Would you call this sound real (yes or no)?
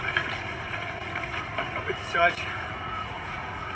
no